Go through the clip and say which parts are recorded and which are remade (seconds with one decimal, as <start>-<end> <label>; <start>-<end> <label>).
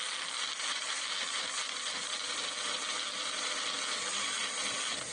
0.0-0.7 recorded; 0.7-3.8 remade; 3.8-5.1 recorded